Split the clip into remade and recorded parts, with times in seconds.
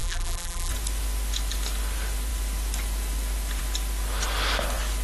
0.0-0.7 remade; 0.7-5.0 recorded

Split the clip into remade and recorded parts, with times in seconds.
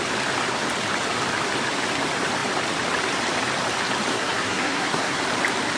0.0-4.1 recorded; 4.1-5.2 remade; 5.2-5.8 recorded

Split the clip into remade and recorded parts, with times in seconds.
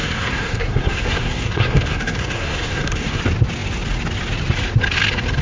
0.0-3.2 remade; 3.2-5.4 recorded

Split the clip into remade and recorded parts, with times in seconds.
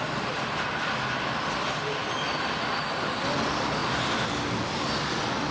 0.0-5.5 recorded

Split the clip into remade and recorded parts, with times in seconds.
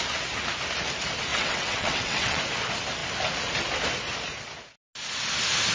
0.0-1.3 recorded; 1.3-2.4 remade; 2.4-5.7 recorded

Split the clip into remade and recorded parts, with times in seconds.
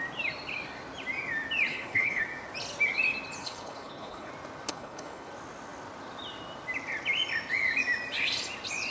0.0-1.7 recorded; 1.7-2.2 remade; 2.2-3.4 recorded; 3.4-4.3 remade; 4.3-4.7 recorded; 4.7-5.3 remade; 5.3-8.9 recorded